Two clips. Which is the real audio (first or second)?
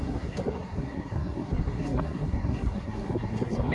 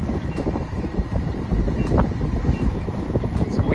second